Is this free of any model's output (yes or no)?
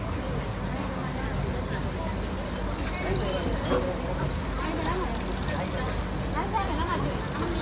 yes